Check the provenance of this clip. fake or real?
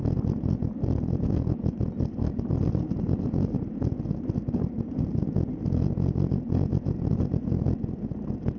real